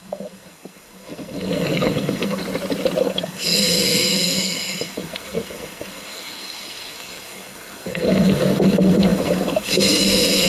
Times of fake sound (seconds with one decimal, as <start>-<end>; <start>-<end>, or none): 0.0-2.4; 3.0-10.5